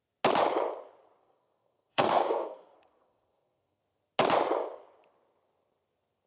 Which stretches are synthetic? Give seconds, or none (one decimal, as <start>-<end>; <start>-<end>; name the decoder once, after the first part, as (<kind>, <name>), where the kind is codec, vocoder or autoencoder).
1.2-3.8 (codec, SNAC)